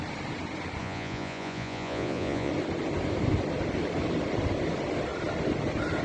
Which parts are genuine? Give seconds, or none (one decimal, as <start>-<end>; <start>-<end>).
0.0-0.8; 2.5-6.0